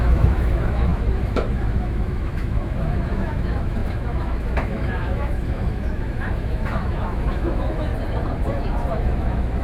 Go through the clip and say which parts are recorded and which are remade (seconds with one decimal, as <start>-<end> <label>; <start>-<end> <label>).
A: 0.0-7.9 remade; 7.9-8.9 recorded; 8.9-9.6 remade